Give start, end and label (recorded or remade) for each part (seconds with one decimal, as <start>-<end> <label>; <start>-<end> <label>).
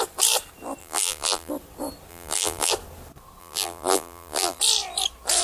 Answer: 0.0-0.8 recorded; 0.8-1.5 remade; 1.5-2.1 recorded; 2.1-2.7 remade; 2.7-3.4 recorded; 3.4-4.6 remade; 4.6-5.4 recorded